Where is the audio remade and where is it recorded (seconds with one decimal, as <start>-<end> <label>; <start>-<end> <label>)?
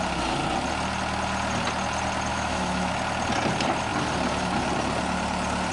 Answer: 0.0-2.3 recorded; 2.3-2.9 remade; 2.9-5.7 recorded